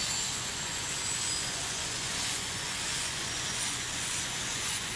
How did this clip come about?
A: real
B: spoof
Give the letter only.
B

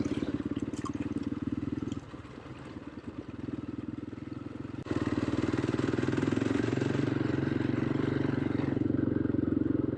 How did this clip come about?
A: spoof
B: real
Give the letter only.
B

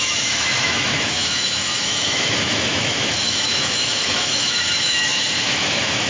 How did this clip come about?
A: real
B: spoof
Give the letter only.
B